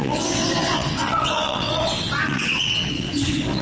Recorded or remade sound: remade